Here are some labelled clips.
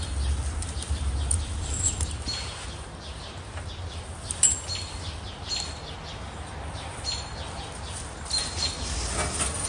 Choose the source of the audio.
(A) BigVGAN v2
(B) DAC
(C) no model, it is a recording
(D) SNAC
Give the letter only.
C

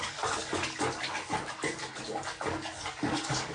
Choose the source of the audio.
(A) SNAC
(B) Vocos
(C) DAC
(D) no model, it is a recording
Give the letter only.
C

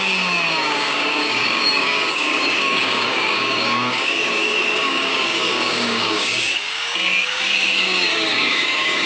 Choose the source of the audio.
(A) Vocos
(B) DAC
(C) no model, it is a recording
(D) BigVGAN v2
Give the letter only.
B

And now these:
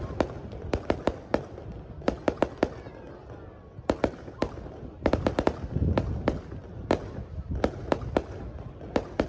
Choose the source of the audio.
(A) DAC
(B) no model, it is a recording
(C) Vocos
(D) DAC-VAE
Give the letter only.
B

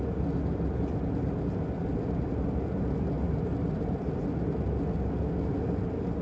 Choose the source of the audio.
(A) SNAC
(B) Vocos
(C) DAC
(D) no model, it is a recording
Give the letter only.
D